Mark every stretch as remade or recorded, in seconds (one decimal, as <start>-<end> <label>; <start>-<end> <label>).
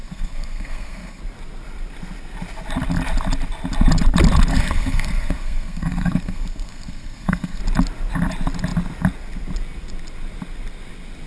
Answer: 0.0-1.2 remade; 1.2-4.5 recorded; 4.5-7.6 remade; 7.6-11.3 recorded